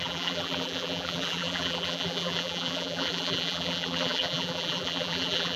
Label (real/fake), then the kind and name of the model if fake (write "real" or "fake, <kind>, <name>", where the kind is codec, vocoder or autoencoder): fake, vocoder, BigVGAN v2